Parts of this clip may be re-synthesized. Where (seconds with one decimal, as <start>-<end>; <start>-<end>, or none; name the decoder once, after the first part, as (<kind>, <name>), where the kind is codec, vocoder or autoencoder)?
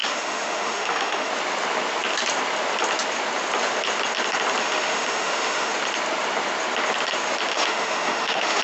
0.0-1.3 (autoencoder, DAC-VAE); 4.6-5.7; 7.5-8.6